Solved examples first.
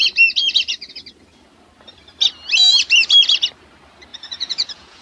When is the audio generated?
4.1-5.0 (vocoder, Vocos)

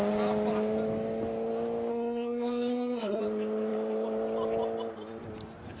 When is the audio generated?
1.9-3.2 (codec, SNAC)

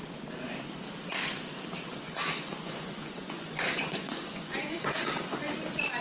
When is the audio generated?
1.9-5.5 (vocoder, Vocos)

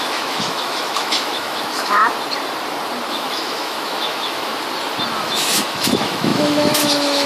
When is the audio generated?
0.0-2.0 (autoencoder, DAC-VAE); 3.1-4.5; 5.2-7.3

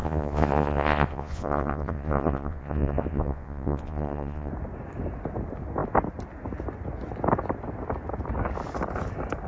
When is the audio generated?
0.0-4.5 (vocoder, Vocos)